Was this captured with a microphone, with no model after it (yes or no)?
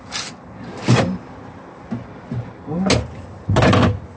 yes